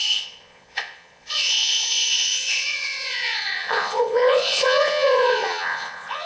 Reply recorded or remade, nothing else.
remade